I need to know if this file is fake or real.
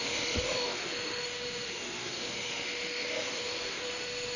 fake